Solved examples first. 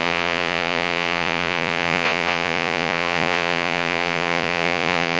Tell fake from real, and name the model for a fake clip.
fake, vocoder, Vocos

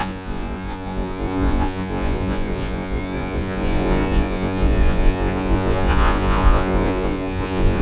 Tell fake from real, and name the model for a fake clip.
fake, vocoder, Vocos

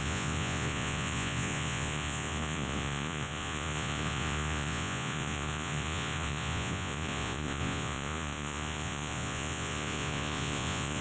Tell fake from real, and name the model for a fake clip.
fake, vocoder, Vocos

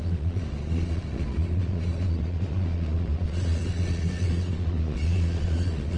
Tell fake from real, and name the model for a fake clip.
fake, vocoder, Vocos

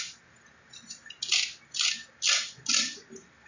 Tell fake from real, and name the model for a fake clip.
real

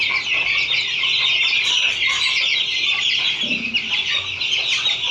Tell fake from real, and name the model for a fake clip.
real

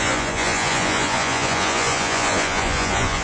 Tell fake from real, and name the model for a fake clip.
fake, vocoder, Vocos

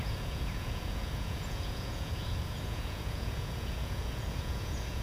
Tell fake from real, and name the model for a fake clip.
fake, vocoder, Vocos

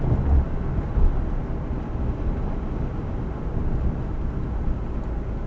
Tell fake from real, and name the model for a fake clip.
real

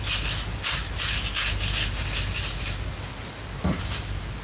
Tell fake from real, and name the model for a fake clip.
real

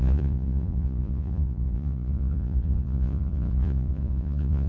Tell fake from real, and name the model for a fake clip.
fake, vocoder, Vocos